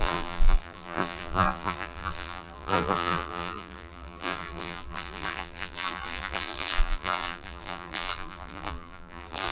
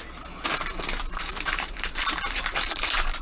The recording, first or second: second